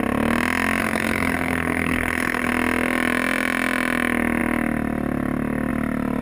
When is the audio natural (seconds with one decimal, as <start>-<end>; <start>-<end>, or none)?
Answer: 0.0-0.8; 2.5-6.2